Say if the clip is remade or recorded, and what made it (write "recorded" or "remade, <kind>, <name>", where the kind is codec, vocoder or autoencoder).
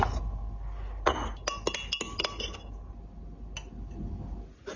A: recorded